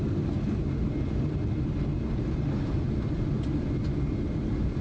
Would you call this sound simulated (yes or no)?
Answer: no